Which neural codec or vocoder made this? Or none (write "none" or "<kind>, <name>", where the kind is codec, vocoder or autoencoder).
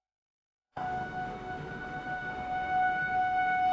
autoencoder, DAC-VAE